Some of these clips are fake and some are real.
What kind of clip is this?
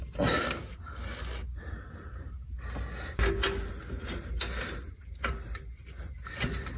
real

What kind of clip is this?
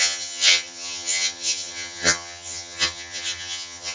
fake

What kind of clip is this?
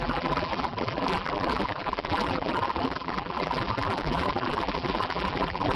fake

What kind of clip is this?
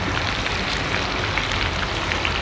real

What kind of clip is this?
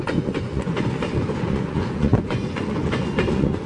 fake